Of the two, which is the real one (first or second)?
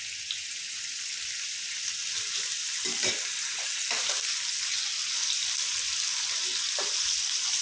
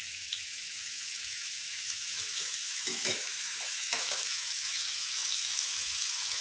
first